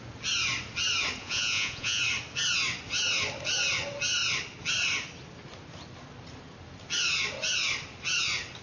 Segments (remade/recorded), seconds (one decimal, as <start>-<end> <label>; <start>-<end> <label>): 0.0-1.2 recorded; 1.2-2.0 remade; 2.0-8.6 recorded

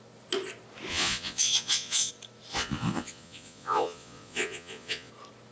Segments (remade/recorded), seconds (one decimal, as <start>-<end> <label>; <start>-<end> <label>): 0.0-0.9 recorded; 0.9-2.1 remade; 2.1-2.5 recorded; 2.5-5.1 remade; 5.1-5.5 recorded